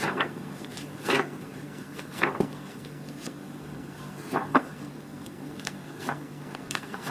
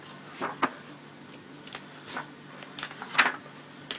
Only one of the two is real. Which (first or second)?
second